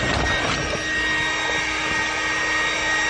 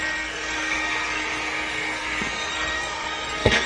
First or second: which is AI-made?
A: second